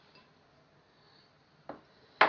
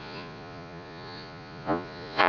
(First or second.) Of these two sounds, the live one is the first